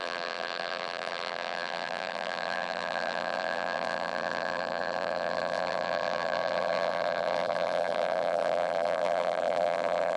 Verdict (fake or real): fake